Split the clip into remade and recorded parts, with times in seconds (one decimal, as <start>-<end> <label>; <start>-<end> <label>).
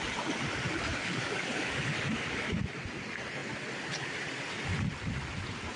0.0-0.9 recorded; 0.9-2.6 remade; 2.6-5.8 recorded